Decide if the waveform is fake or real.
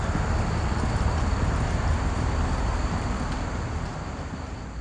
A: real